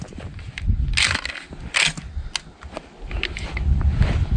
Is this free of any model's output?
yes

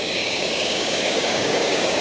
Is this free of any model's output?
no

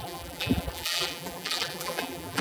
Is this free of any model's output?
no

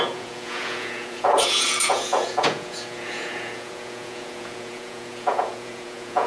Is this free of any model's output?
no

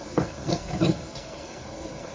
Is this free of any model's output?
no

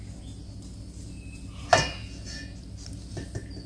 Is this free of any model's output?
yes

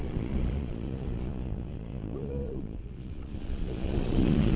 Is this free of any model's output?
no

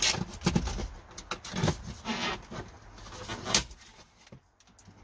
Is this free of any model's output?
yes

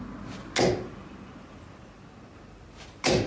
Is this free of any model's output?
yes